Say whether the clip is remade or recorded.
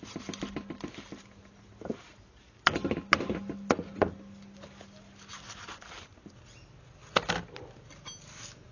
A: recorded